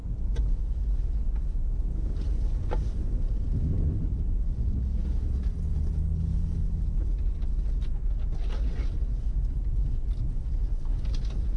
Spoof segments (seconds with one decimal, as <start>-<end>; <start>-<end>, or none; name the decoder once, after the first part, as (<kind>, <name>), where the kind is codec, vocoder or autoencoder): 0.0-0.6 (vocoder, BigVGAN v2)

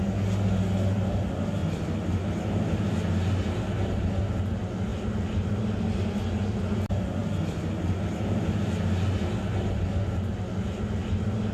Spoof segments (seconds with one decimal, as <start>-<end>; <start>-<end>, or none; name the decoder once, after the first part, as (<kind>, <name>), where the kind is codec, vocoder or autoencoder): none